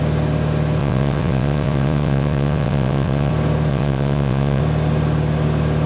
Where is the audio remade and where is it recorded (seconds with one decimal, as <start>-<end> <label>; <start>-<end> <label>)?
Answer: 0.0-0.8 recorded; 0.8-3.3 remade; 3.3-3.7 recorded; 3.7-4.6 remade; 4.6-5.9 recorded